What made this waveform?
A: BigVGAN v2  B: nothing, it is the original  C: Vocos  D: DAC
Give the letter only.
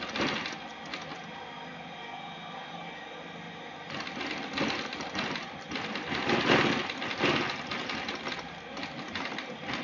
B